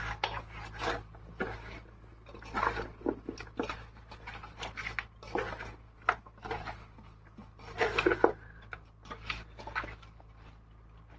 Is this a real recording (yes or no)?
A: yes